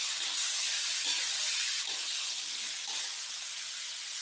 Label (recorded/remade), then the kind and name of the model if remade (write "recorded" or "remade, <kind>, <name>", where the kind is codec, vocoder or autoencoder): recorded